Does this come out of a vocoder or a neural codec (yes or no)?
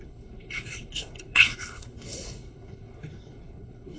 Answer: yes